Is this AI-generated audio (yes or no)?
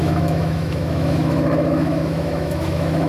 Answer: yes